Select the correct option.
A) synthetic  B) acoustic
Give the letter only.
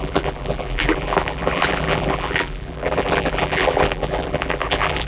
A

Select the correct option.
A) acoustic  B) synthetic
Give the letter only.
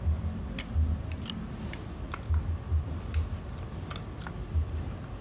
A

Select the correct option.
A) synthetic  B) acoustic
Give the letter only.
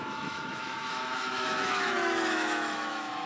A